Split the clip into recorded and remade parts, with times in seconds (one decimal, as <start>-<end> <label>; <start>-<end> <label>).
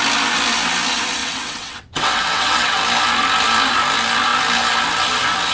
0.0-1.2 recorded; 1.2-2.8 remade; 2.8-5.5 recorded